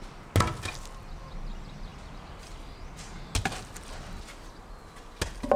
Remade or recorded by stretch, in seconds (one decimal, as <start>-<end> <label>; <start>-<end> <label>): 0.0-5.6 recorded

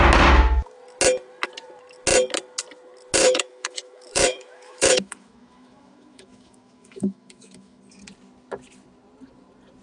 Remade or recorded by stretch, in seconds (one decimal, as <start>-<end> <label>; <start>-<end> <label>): 0.0-3.2 recorded; 3.2-7.8 remade; 7.8-9.8 recorded

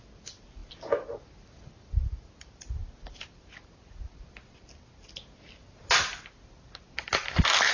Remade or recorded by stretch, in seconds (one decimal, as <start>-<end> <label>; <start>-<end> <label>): 0.0-7.7 recorded